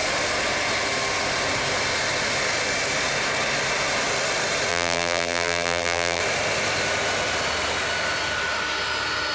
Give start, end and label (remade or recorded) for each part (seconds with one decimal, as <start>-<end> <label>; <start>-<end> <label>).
0.0-4.7 recorded; 4.7-6.2 remade; 6.2-9.3 recorded